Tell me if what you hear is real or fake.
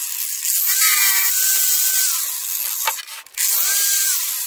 real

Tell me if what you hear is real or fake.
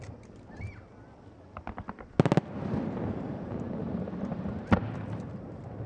real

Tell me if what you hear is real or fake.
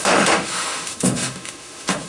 fake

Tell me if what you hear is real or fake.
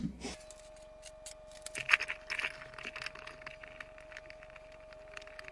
real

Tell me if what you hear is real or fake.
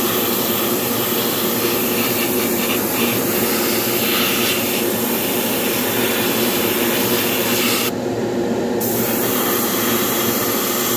real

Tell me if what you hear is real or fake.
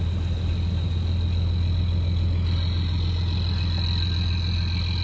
real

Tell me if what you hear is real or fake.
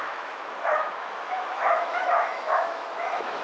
fake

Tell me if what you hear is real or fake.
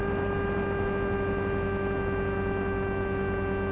real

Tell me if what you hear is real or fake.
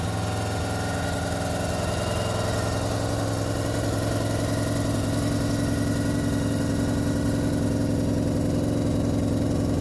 real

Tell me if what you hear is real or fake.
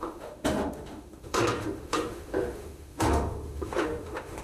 fake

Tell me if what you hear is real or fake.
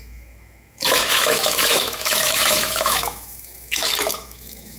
fake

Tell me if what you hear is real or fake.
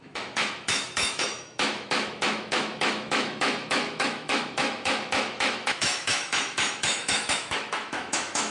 fake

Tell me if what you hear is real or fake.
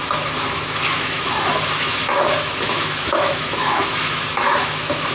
fake